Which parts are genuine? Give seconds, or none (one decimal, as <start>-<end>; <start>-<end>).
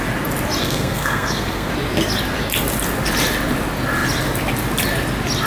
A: 0.0-0.6; 1.7-5.5